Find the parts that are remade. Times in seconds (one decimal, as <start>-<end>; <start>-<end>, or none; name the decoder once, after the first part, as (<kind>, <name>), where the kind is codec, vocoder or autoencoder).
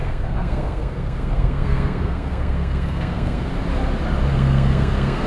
0.0-3.5 (codec, SNAC); 4.3-5.3